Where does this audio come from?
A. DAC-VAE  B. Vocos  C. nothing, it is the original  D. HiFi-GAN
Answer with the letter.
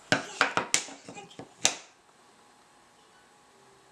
C